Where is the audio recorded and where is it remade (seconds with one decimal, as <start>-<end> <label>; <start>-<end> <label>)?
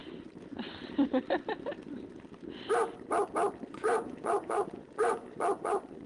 0.0-3.7 recorded; 3.7-6.1 remade